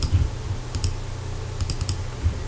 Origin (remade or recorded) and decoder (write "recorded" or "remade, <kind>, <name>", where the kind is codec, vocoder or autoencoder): recorded